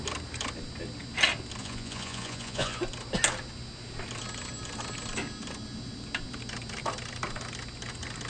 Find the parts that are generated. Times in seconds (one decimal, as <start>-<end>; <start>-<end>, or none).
1.6-2.8